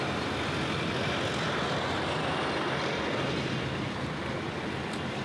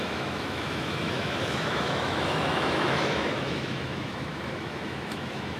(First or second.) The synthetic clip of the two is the second